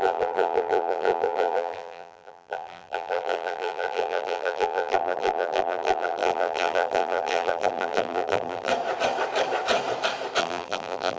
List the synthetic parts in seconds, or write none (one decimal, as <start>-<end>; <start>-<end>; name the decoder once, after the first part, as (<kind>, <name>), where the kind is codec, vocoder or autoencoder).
0.0-8.7 (vocoder, BigVGAN v2); 10.4-11.2